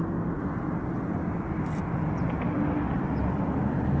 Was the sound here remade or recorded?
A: recorded